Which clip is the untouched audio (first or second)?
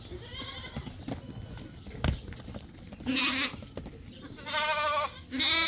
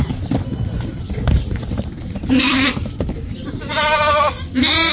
first